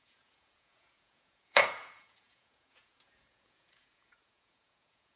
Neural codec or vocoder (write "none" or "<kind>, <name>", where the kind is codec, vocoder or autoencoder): vocoder, Vocos